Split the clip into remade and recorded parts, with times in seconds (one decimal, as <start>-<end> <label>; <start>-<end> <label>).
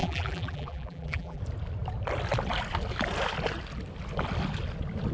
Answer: 0.0-1.4 remade; 1.4-5.1 recorded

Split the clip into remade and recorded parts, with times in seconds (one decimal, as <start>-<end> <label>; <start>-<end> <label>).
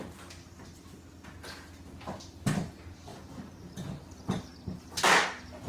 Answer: 0.0-3.1 recorded; 3.1-5.0 remade; 5.0-5.7 recorded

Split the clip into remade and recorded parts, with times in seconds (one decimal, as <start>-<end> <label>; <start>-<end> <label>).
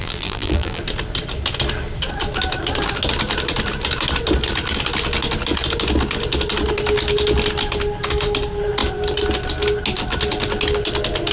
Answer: 0.0-0.8 remade; 0.8-11.3 recorded